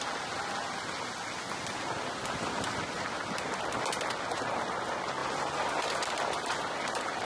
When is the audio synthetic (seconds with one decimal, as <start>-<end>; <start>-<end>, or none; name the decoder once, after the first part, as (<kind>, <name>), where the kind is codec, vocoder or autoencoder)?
none

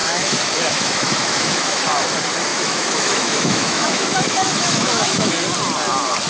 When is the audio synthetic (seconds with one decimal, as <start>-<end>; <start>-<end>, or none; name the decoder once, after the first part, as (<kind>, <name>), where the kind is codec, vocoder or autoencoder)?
0.0-1.8 (autoencoder, DAC-VAE); 2.5-5.3

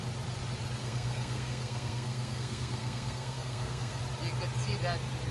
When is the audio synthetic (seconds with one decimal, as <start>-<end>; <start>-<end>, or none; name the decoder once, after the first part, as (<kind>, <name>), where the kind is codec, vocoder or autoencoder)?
0.8-4.0 (codec, SNAC)

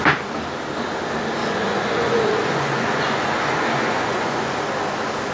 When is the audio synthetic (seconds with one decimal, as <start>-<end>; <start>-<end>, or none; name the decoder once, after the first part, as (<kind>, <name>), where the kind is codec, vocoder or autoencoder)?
1.4-4.6 (vocoder, Vocos)

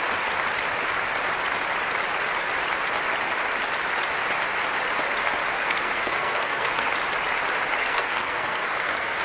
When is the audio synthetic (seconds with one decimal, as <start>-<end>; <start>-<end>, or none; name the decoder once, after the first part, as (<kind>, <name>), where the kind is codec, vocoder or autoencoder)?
5.6-6.9 (codec, SNAC); 7.8-9.2

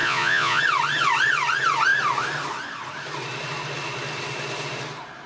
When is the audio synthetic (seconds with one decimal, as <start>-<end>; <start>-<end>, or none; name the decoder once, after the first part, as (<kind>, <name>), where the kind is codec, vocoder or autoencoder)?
0.0-0.6 (vocoder, Vocos)

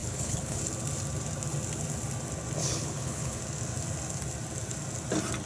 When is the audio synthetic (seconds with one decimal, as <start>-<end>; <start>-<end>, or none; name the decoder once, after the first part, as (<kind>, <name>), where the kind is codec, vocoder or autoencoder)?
0.0-0.6 (codec, HILCodec); 2.6-3.4

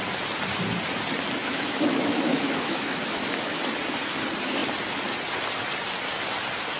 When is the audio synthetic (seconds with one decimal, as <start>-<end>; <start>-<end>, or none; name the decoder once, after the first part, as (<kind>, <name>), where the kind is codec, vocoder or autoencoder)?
1.4-3.6 (autoencoder, DAC-VAE)